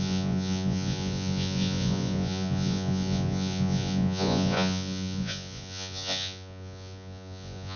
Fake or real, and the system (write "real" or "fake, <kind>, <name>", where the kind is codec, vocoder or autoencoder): fake, vocoder, Vocos